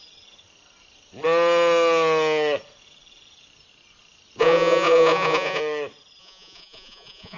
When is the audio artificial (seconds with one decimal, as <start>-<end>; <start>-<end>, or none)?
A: 4.4-5.6; 6.2-7.4